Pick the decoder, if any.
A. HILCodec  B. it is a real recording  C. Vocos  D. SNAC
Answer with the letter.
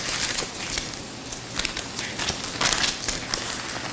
B